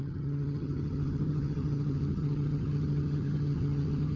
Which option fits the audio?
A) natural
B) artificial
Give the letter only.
B